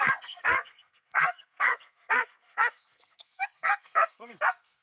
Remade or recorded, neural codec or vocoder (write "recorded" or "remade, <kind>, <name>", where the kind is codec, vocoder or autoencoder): remade, codec, SNAC